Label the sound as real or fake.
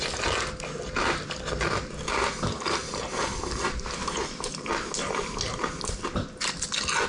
real